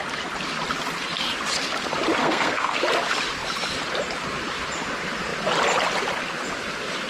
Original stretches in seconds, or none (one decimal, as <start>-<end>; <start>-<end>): 0.0-2.2; 2.8-7.1